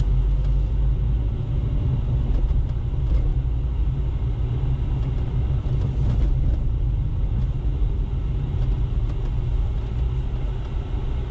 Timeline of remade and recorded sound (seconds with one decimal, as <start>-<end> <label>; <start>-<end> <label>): 0.0-7.1 recorded; 7.1-8.3 remade; 8.3-11.3 recorded